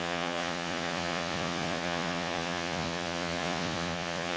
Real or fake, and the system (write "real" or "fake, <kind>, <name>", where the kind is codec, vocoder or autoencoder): fake, vocoder, Vocos